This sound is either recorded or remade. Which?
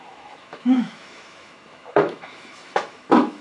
remade